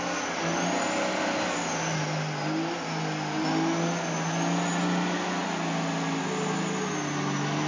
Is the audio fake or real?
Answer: real